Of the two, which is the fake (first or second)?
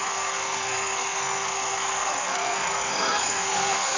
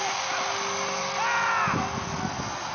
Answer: first